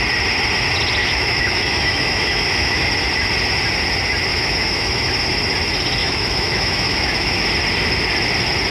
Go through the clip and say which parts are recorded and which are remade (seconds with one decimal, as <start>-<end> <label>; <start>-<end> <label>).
0.0-1.0 recorded; 1.0-2.9 remade; 2.9-4.3 recorded; 4.3-5.1 remade; 5.1-6.0 recorded; 6.0-7.5 remade; 7.5-8.7 recorded